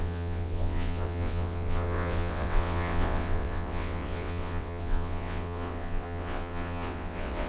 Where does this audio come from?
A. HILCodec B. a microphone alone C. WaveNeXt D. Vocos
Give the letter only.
C